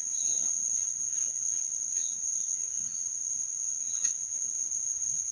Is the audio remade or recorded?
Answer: remade